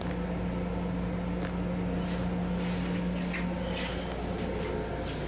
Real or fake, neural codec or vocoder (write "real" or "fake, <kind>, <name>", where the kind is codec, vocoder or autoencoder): real